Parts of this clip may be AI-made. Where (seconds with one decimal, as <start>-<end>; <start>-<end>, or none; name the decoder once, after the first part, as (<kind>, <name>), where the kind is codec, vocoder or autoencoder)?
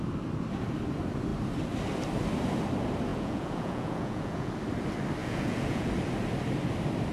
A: 3.1-4.5 (vocoder, Vocos); 5.2-5.9